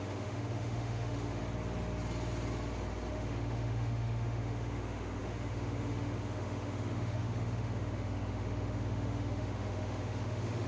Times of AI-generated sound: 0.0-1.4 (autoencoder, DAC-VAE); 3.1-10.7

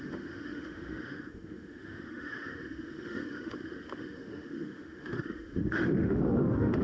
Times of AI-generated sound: 0.0-6.8 (autoencoder, DAC-VAE)

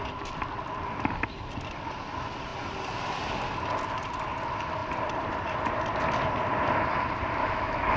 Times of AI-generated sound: 7.4-8.0 (autoencoder, DAC-VAE)

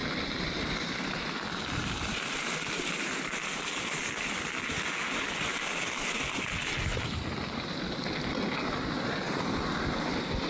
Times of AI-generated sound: none

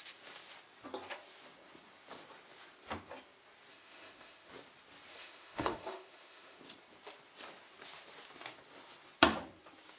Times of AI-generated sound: 3.7-4.5 (autoencoder, DAC-VAE); 5.1-6.6

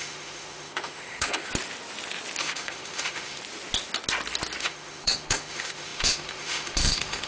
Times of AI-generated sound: 0.0-1.5 (autoencoder, DAC-VAE); 2.4-3.4; 4.6-7.3

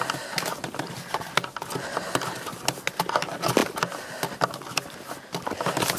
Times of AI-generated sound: none

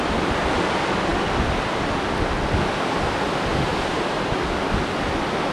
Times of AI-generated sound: none